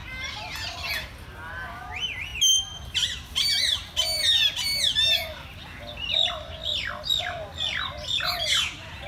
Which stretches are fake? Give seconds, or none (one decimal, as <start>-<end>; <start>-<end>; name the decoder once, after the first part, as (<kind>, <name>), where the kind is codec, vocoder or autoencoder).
none

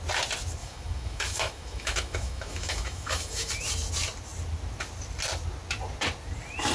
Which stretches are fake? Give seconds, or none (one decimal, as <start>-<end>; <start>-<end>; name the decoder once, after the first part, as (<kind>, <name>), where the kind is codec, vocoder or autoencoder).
0.6-3.5 (autoencoder, DAC-VAE)

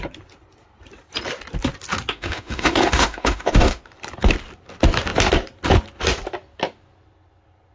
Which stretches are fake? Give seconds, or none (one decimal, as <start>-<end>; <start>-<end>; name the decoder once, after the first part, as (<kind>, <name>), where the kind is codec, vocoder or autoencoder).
2.1-3.8 (autoencoder, DAC-VAE)

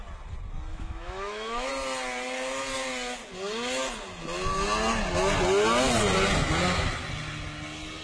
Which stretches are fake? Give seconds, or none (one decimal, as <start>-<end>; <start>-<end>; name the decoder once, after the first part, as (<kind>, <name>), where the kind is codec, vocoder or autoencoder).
0.7-1.7 (autoencoder, DAC-VAE)

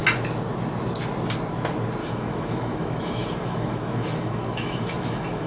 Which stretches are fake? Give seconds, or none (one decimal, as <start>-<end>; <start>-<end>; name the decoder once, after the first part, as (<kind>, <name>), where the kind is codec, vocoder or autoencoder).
2.0-5.5 (autoencoder, DAC-VAE)